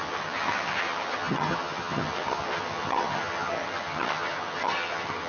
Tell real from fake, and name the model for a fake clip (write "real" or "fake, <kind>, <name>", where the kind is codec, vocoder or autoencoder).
fake, vocoder, HiFi-GAN